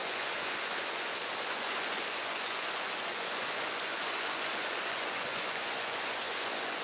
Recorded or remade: remade